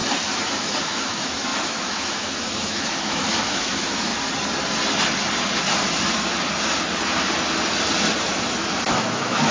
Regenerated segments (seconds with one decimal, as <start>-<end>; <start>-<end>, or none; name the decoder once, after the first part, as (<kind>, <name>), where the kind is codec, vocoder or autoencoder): 0.5-4.1 (autoencoder, DAC-VAE); 8.9-9.5